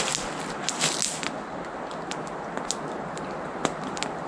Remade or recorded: recorded